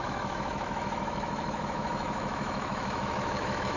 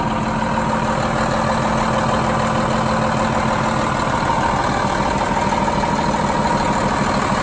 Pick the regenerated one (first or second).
first